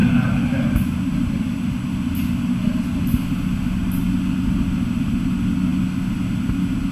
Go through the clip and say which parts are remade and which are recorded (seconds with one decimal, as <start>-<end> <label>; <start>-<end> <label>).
0.0-6.9 recorded